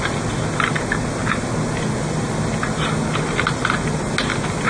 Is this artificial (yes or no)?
no